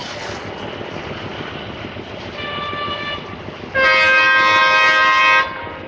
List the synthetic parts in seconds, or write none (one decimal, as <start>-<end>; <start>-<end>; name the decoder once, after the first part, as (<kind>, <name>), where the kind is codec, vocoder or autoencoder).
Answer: none